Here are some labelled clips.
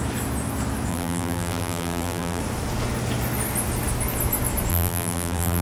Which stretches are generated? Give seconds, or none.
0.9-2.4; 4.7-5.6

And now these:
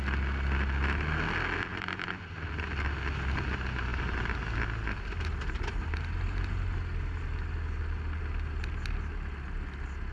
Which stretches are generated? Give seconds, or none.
1.7-2.5

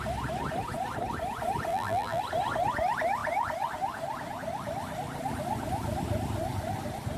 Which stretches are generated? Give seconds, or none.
1.7-2.2

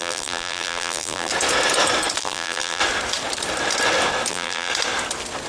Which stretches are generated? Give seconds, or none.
0.0-1.3; 2.2-2.8; 4.3-4.7

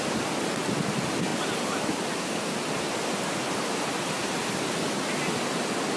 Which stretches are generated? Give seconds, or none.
none

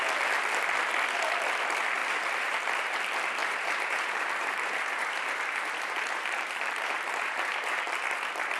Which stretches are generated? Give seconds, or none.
2.0-3.0; 3.4-7.8